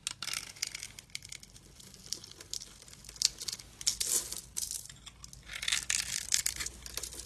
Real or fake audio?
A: real